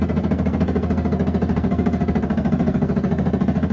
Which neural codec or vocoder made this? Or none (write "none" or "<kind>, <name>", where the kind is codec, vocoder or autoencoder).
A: codec, SNAC